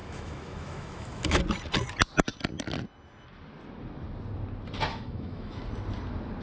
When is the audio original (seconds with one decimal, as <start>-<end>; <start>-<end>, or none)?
1.4-4.9; 5.6-6.4